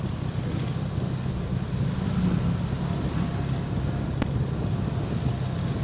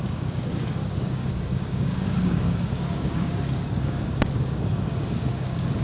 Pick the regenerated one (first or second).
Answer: second